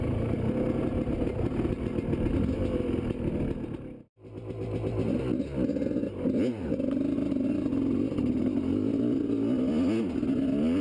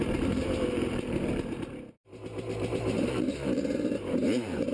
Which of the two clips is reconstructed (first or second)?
second